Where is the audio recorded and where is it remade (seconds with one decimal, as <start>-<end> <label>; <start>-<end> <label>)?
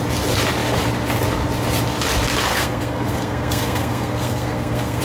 0.0-2.5 recorded; 2.5-5.0 remade